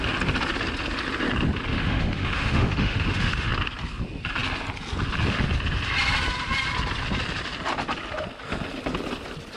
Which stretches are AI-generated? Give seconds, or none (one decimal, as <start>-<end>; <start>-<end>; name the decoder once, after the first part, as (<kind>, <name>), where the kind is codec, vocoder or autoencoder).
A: 1.7-3.5 (autoencoder, DAC-VAE)